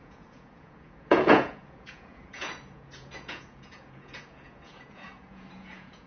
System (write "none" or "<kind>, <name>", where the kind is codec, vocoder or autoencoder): vocoder, Vocos